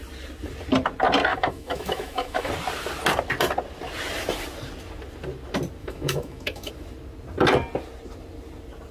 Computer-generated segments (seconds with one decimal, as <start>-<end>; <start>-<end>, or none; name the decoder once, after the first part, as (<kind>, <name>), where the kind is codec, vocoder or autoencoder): 1.3-2.5 (autoencoder, DAC-VAE); 5.8-6.7